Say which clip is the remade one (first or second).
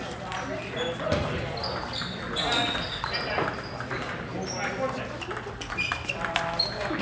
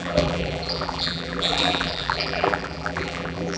second